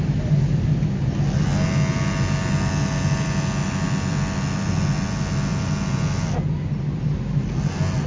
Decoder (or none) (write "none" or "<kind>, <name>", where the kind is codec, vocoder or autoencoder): none